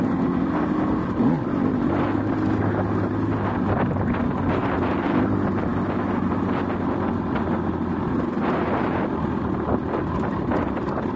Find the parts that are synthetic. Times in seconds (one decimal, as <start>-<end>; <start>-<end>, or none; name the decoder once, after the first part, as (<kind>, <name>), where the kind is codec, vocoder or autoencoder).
none